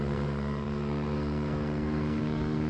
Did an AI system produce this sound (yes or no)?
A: yes